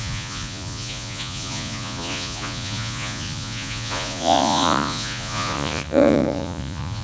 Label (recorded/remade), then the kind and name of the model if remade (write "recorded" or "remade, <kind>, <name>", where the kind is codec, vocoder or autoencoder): remade, vocoder, Vocos